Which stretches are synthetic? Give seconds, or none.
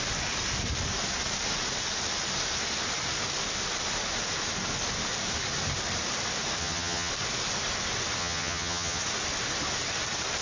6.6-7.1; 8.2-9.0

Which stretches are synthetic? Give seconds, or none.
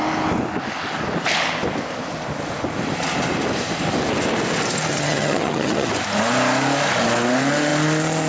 4.9-5.9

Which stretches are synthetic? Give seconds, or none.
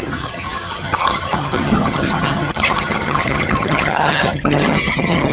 0.0-5.3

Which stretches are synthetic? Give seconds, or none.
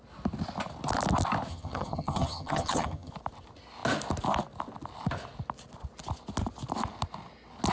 1.5-3.1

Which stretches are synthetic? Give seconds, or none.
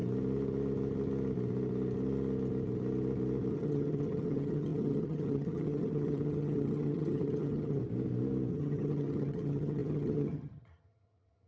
3.5-7.8; 8.5-11.5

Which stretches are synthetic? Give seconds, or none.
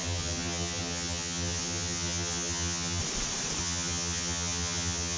0.0-3.0; 3.6-5.2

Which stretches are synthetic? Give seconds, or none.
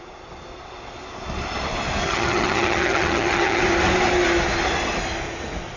2.0-3.6